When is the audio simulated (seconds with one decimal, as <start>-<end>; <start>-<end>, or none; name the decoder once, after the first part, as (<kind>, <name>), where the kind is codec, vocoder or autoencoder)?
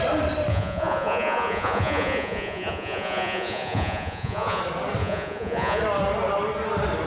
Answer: 0.5-4.6 (vocoder, Vocos); 5.0-5.8